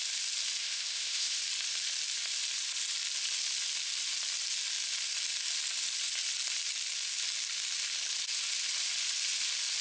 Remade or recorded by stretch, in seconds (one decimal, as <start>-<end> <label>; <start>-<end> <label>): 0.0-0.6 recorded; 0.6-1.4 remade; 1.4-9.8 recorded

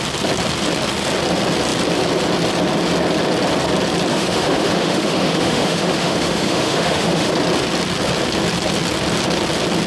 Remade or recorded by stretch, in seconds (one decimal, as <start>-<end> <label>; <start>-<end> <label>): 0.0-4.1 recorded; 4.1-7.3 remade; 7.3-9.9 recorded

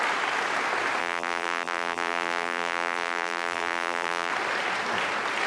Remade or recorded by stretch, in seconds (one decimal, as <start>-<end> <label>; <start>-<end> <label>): 0.0-1.0 recorded; 1.0-4.3 remade; 4.3-5.5 recorded

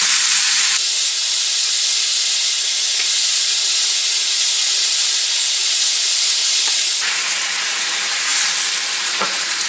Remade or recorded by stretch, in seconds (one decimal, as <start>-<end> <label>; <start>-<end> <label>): 0.0-8.3 remade; 8.3-8.9 recorded; 8.9-9.7 remade